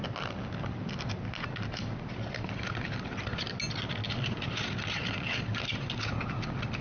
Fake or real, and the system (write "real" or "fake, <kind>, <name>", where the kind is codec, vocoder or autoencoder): real